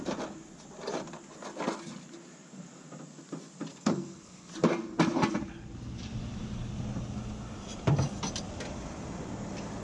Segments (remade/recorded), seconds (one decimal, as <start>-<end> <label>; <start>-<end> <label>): 0.0-3.7 recorded; 3.7-4.5 remade; 4.5-9.8 recorded